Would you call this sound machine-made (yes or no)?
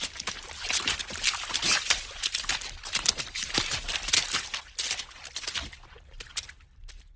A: no